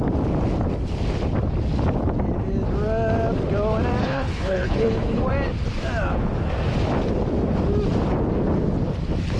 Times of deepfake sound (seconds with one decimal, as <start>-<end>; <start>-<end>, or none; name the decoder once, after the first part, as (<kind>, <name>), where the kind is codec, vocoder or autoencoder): 4.0-5.2 (codec, HILCodec)